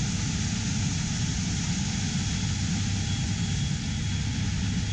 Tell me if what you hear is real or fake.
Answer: real